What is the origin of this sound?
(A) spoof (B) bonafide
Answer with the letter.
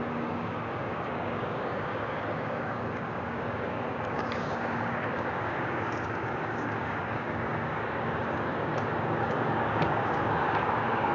A